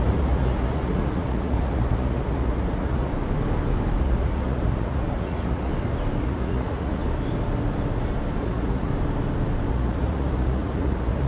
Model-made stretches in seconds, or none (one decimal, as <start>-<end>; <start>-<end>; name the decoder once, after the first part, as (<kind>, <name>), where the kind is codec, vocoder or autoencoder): 0.0-3.1 (vocoder, Vocos); 4.0-5.7; 6.2-7.0; 8.4-8.9; 9.7-11.3